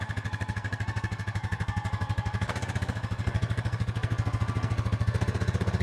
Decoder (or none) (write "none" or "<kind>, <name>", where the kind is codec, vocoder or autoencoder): codec, SNAC